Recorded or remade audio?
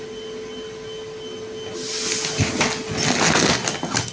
recorded